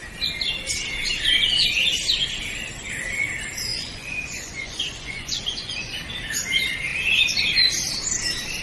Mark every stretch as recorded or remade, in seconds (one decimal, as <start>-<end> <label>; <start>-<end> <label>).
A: 0.0-3.7 recorded; 3.7-6.0 remade; 6.0-8.6 recorded